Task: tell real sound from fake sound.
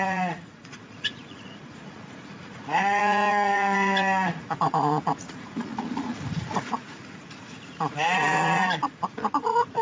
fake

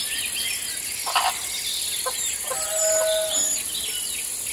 real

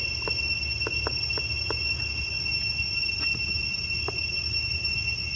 real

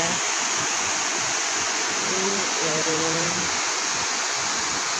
fake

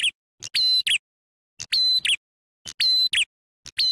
real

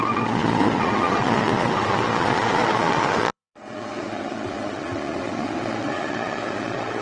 fake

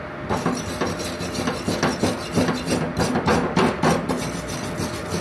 real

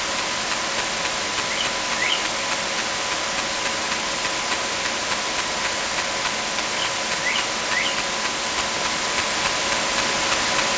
real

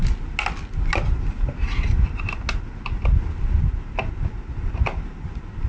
real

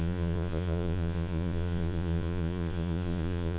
fake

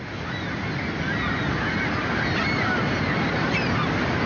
real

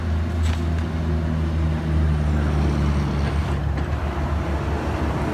real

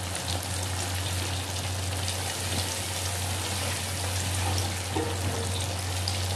real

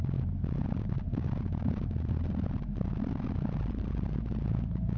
real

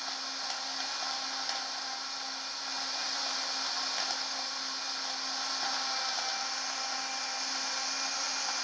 real